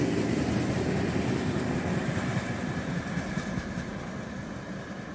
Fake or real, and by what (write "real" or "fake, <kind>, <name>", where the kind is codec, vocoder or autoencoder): real